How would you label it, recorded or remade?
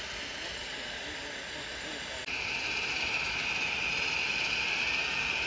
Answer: recorded